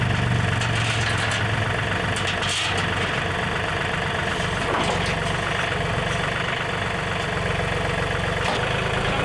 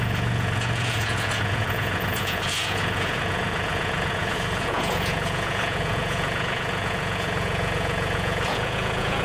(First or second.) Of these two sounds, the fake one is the second